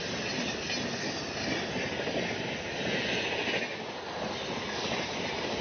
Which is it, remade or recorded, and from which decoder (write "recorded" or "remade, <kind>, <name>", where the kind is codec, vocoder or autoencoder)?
recorded